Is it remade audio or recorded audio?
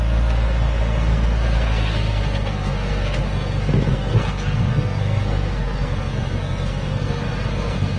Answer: remade